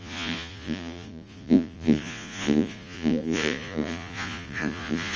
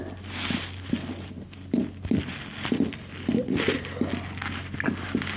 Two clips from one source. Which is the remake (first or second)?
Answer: first